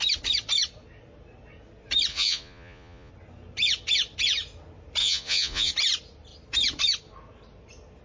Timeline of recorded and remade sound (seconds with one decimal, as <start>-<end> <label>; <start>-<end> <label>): 0.0-2.1 recorded; 2.1-3.1 remade; 3.1-5.0 recorded; 5.0-5.7 remade; 5.7-8.0 recorded